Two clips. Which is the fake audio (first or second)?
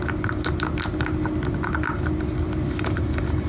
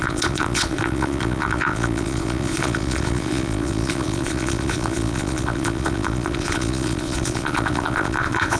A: second